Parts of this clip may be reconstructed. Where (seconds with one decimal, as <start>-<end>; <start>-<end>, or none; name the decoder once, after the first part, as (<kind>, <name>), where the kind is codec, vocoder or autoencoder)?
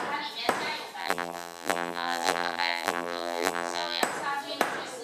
1.0-4.0 (vocoder, BigVGAN v2)